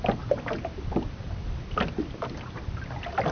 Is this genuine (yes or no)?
yes